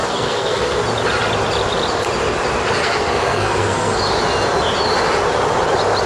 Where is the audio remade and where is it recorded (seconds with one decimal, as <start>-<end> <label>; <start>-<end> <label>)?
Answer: 0.0-0.8 remade; 0.8-2.8 recorded; 2.8-4.0 remade; 4.0-6.1 recorded